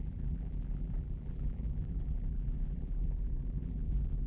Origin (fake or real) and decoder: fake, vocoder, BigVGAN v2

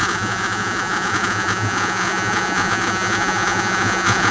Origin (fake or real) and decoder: fake, vocoder, Vocos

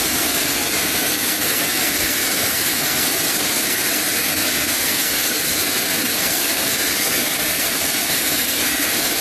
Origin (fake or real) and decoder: fake, codec, SNAC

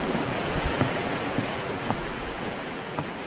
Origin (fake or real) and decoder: fake, vocoder, BigVGAN v2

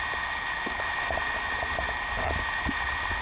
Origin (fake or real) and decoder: real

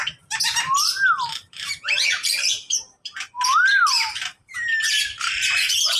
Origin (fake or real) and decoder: fake, vocoder, BigVGAN v2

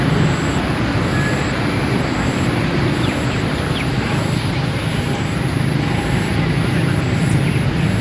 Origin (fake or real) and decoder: real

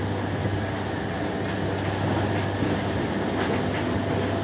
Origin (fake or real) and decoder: real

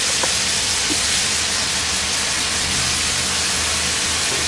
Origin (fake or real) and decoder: real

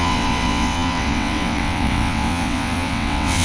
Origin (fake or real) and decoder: fake, vocoder, WaveNeXt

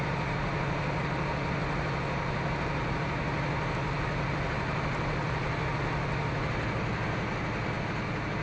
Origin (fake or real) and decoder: real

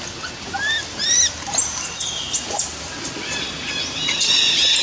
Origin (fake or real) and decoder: real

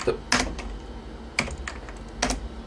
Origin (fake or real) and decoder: real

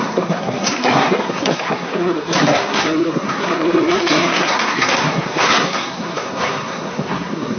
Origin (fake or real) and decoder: fake, codec, SNAC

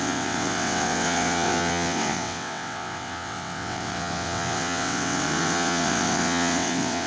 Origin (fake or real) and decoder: fake, vocoder, WaveNeXt